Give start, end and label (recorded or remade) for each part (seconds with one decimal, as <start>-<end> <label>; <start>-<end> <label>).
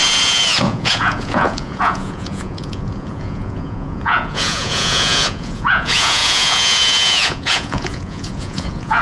0.0-9.0 remade